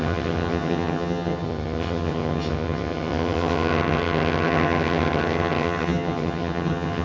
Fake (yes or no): yes